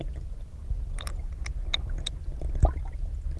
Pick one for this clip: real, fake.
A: real